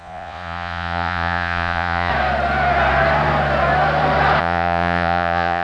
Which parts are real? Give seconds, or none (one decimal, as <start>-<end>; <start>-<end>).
2.1-4.4